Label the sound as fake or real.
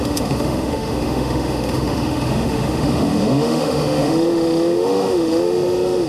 fake